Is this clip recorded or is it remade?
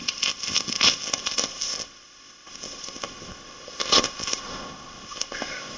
remade